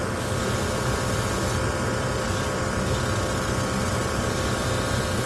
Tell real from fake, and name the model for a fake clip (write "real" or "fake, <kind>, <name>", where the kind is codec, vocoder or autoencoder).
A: real